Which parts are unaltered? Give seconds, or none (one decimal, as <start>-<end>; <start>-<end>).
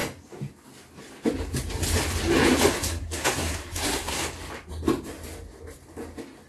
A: 0.0-2.7; 4.2-6.5